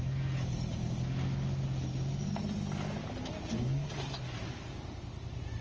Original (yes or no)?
yes